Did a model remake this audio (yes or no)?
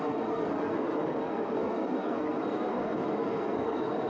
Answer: yes